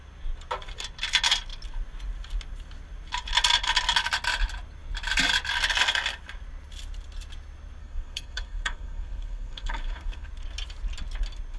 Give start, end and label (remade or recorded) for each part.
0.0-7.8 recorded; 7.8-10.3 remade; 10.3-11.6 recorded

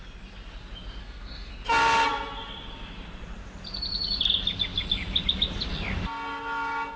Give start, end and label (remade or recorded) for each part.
0.0-1.0 recorded; 1.0-1.5 remade; 1.5-7.0 recorded